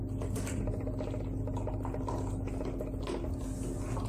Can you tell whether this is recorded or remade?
recorded